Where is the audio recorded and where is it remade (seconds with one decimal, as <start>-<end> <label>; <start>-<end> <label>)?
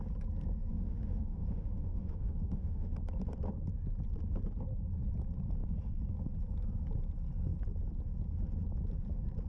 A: 0.0-0.7 recorded; 0.7-2.9 remade; 2.9-9.5 recorded